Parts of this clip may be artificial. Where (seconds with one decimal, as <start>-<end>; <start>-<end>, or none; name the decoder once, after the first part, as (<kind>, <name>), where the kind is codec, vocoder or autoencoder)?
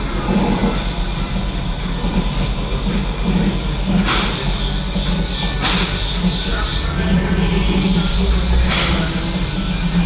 none